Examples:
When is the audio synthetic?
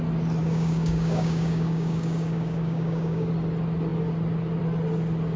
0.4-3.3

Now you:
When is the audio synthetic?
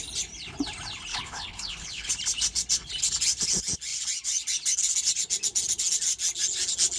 1.1-2.1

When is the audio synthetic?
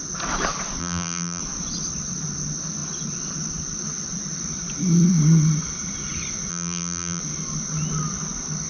0.8-1.4; 6.5-7.2